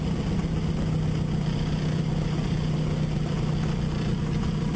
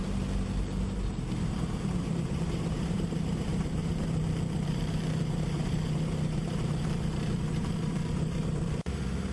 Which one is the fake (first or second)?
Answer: second